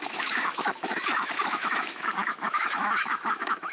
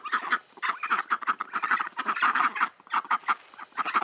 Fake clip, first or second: first